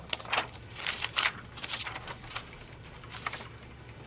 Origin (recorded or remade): recorded